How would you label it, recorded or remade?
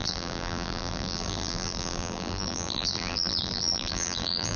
remade